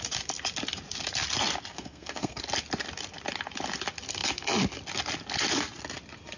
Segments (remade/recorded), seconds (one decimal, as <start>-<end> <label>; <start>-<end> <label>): 0.0-1.7 recorded; 1.7-2.4 remade; 2.4-6.4 recorded